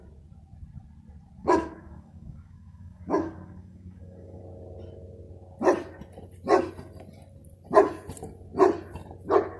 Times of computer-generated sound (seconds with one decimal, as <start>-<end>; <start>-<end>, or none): 1.4-4.4